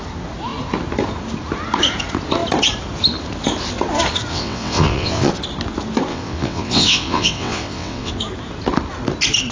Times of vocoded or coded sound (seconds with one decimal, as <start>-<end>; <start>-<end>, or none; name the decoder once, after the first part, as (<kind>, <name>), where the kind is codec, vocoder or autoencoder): 4.3-5.3 (vocoder, WaveNeXt); 6.1-8.1